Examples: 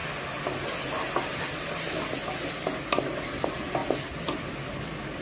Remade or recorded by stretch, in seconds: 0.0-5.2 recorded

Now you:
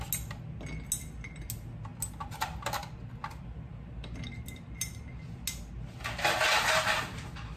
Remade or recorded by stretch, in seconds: 0.0-7.6 recorded